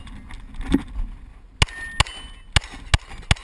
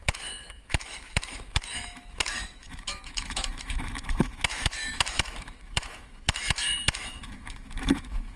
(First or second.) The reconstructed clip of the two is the second